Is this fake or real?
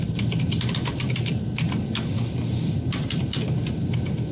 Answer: real